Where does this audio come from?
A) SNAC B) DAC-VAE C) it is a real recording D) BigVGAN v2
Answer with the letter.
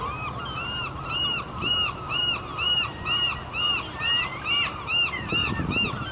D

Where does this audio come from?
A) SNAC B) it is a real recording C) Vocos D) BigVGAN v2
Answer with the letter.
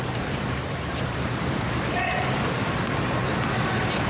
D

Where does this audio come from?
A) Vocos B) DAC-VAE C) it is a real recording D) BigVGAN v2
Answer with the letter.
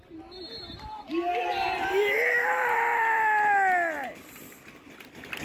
C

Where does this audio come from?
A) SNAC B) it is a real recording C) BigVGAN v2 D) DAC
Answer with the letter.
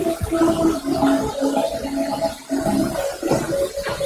B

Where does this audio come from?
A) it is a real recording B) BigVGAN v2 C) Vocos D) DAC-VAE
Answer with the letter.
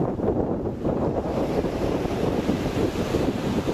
B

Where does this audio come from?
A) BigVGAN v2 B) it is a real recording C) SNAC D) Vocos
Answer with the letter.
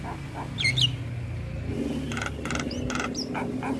B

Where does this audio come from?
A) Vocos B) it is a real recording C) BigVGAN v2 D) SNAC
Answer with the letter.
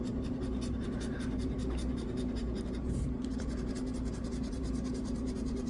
C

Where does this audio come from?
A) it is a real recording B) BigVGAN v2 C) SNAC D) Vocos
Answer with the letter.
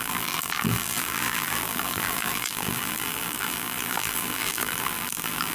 B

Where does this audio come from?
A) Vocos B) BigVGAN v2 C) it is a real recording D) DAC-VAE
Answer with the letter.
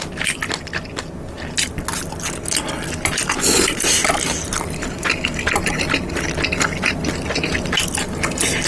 C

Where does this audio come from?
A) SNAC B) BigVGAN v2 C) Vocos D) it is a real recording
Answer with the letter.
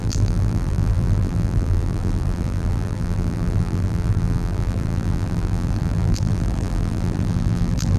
B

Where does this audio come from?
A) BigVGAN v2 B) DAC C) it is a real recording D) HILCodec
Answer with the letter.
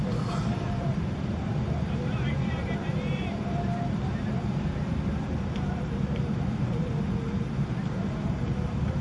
A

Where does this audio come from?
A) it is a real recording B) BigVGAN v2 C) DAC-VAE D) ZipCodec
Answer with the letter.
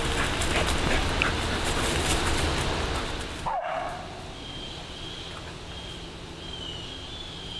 A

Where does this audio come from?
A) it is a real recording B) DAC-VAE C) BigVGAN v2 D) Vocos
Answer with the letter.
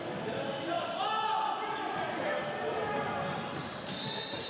A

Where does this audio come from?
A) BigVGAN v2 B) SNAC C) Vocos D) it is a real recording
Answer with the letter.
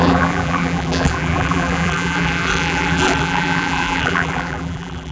A